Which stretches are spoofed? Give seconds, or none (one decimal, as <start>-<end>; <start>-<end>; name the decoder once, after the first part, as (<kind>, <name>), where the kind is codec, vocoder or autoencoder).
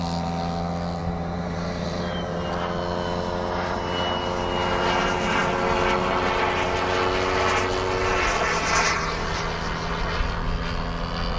1.0-2.5 (vocoder, BigVGAN v2)